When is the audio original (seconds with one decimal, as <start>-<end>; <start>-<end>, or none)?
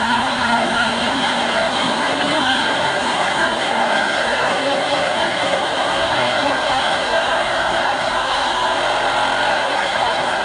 8.8-9.5